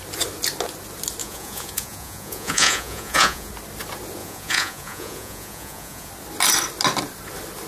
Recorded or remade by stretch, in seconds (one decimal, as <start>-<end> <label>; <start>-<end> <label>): 0.0-1.2 recorded; 1.2-3.5 remade; 3.5-4.2 recorded; 4.2-6.1 remade; 6.1-7.7 recorded